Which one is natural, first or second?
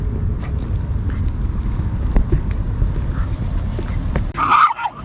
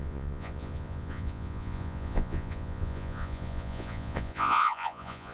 first